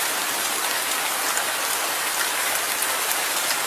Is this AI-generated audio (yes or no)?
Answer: no